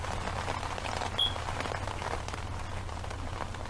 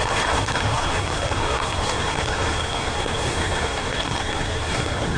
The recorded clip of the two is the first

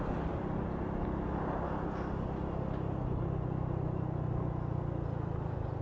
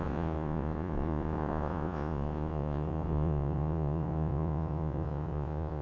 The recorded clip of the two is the first